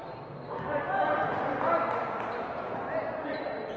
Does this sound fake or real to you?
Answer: real